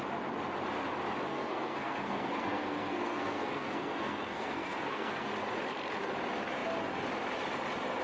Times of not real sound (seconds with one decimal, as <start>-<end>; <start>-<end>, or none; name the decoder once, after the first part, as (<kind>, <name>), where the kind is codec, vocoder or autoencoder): 1.3-5.3 (codec, SNAC)